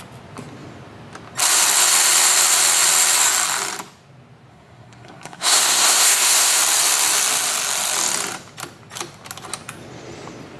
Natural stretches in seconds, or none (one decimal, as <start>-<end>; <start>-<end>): 0.0-4.5; 6.6-10.6